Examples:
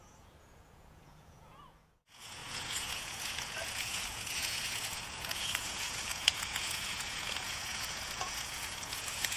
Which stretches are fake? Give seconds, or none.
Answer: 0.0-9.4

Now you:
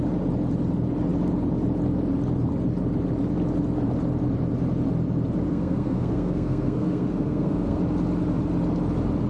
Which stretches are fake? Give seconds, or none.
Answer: 5.5-7.8

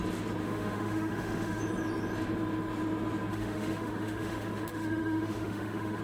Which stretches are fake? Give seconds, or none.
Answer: 0.4-1.6; 3.3-6.0

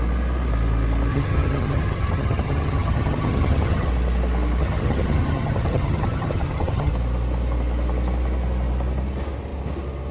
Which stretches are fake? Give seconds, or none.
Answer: 1.1-3.9; 4.6-6.9

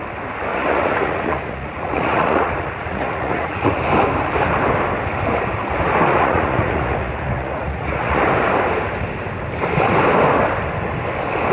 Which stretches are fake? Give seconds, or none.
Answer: 0.5-3.8; 6.1-8.2